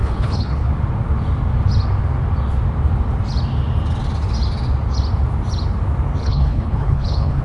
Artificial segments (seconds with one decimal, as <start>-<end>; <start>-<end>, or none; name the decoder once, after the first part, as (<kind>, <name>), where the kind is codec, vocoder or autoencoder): 0.0-0.7 (codec, HILCodec); 6.2-7.4